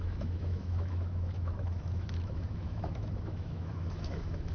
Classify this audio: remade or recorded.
remade